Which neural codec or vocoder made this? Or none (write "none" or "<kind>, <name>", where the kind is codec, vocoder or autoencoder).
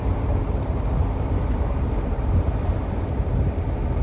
vocoder, BigVGAN v2